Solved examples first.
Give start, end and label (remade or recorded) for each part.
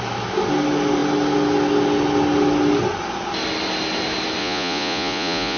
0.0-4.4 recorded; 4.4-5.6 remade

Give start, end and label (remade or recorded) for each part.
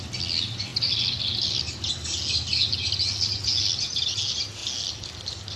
0.0-5.6 recorded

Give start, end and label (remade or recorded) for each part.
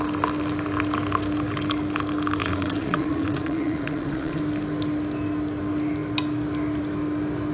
0.0-2.4 recorded; 2.4-4.4 remade; 4.4-7.5 recorded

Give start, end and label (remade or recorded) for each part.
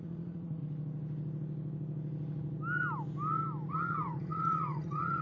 0.0-0.6 remade; 0.6-3.7 recorded; 3.7-5.2 remade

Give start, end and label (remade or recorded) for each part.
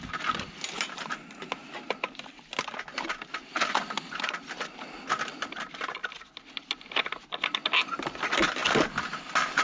0.0-9.6 recorded